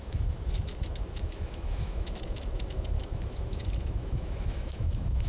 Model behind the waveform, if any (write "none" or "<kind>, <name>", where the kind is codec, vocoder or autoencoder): autoencoder, DAC-VAE